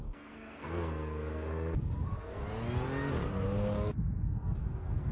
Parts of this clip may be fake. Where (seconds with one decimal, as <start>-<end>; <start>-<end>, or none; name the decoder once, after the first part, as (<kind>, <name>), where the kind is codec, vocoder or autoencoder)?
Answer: 0.0-2.4 (codec, SNAC); 4.2-5.1